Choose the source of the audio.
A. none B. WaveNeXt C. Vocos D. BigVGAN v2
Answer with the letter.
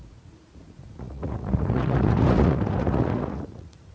C